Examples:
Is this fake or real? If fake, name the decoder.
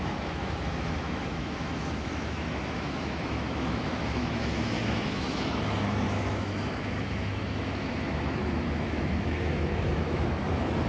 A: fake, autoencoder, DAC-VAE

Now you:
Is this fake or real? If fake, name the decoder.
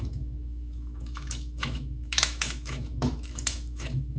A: fake, autoencoder, DAC-VAE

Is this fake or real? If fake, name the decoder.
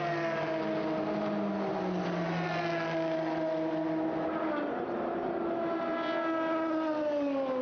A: real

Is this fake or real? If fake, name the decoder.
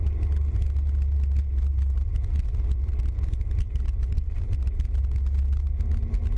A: real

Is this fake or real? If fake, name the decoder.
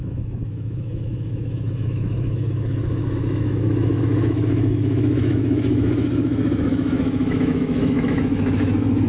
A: fake, autoencoder, DAC-VAE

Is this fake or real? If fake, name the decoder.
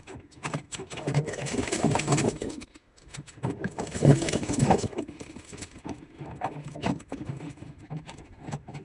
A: fake, autoencoder, DAC-VAE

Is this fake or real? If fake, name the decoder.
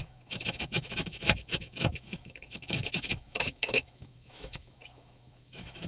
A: fake, autoencoder, DAC-VAE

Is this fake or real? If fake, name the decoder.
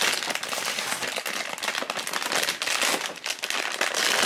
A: real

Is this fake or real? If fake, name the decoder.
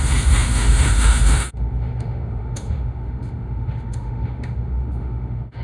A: fake, autoencoder, DAC-VAE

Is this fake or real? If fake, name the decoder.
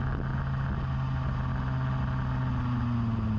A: real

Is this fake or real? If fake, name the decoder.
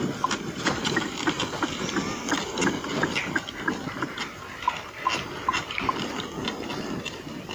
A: real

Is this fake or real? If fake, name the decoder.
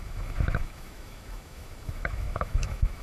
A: fake, autoencoder, DAC-VAE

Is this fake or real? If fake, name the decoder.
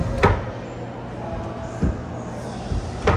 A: real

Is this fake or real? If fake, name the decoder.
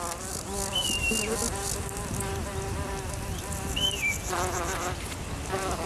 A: real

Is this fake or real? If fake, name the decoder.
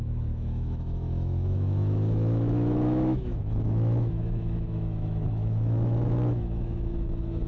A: fake, autoencoder, DAC-VAE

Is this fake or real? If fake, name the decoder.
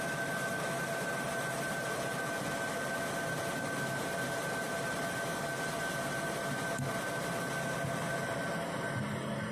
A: real